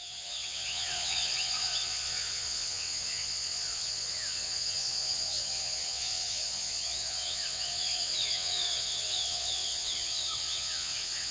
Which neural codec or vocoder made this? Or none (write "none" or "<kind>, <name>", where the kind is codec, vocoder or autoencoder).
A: vocoder, WaveNeXt